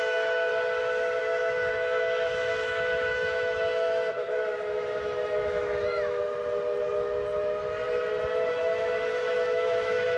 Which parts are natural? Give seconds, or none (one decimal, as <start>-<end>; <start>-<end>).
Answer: 0.5-1.2; 6.2-8.5